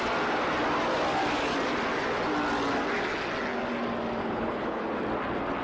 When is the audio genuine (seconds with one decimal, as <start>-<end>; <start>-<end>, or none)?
0.0-4.2; 4.8-5.6